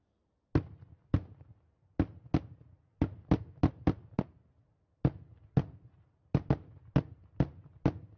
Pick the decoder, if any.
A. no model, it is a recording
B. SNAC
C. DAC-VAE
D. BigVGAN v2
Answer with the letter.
A